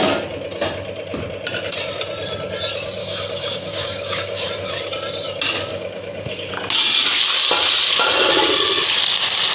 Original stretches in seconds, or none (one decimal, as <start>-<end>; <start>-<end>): 0.0-3.0; 4.5-5.7; 6.5-9.5